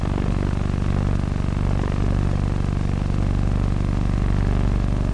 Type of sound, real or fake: real